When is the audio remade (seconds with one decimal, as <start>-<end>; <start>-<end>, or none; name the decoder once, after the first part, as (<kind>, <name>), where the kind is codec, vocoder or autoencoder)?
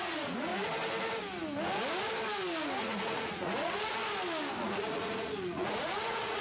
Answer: 0.0-0.5 (vocoder, Vocos); 2.8-4.0; 4.6-6.4